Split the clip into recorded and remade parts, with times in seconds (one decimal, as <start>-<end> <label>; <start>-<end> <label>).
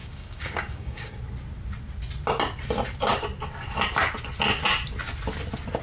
0.0-1.2 remade; 1.2-5.8 recorded